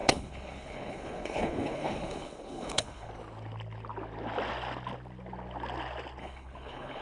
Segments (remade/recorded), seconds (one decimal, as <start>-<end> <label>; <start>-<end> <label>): 0.0-3.1 remade; 3.1-6.2 recorded; 6.2-7.0 remade